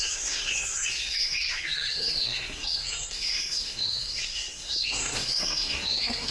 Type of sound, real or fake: fake